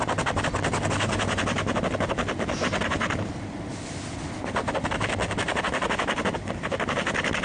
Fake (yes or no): no